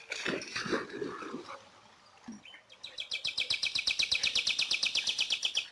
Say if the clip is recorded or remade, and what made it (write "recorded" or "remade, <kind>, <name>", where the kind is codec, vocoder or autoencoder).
recorded